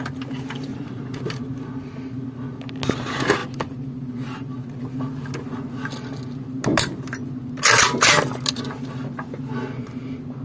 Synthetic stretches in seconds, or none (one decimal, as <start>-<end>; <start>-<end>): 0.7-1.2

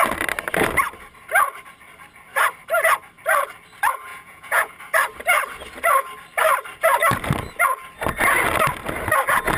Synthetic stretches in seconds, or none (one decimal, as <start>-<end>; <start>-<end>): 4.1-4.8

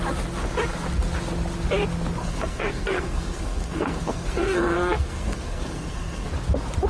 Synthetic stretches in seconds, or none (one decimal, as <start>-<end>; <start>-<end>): 2.2-6.3

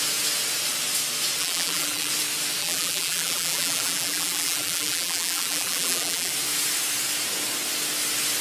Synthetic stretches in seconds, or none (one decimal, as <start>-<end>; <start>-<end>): 1.4-2.1; 2.6-6.3

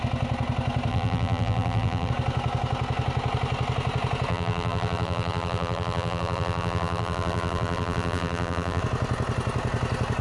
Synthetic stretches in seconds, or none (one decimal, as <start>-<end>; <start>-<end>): 0.9-2.1; 4.3-8.8

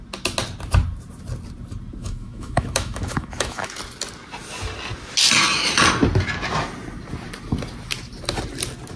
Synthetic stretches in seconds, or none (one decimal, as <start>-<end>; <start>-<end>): 2.0-3.7

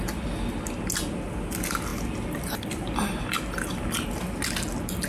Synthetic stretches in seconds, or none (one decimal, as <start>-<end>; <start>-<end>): none